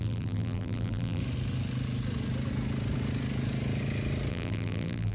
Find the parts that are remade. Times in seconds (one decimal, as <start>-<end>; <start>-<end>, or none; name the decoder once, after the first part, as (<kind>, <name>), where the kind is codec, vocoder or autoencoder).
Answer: 0.0-1.2 (vocoder, BigVGAN v2); 4.3-5.1